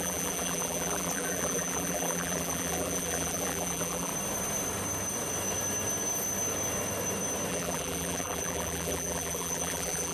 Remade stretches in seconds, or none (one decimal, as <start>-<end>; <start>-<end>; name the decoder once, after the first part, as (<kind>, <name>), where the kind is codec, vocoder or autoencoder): 0.0-4.1 (vocoder, BigVGAN v2); 7.5-10.1